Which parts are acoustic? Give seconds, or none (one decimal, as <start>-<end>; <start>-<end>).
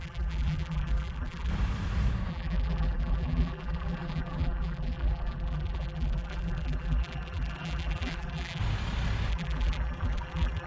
1.5-2.3; 8.6-9.3